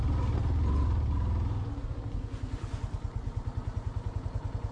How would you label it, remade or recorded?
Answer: recorded